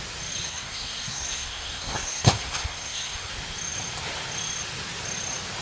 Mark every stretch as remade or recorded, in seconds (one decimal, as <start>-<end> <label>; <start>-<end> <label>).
0.0-0.5 recorded; 0.5-3.3 remade; 3.3-5.6 recorded